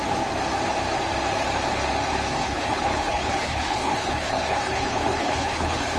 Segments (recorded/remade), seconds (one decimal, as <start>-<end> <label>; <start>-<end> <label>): 0.0-2.4 recorded; 2.4-6.0 remade